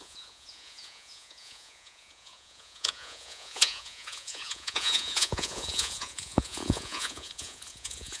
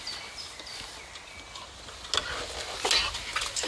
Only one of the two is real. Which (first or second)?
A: second